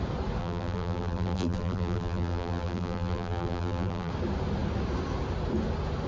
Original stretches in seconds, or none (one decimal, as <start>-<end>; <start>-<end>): 0.0-0.4; 4.1-6.1

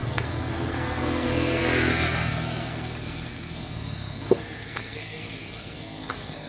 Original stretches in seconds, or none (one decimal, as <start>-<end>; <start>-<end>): none

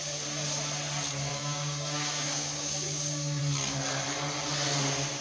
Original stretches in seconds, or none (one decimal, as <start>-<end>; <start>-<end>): 0.0-1.3; 3.4-5.2

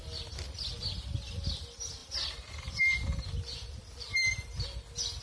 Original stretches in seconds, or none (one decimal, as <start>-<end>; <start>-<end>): 0.0-2.0

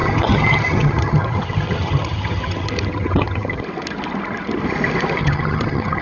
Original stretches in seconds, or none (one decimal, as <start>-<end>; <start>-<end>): 3.6-5.2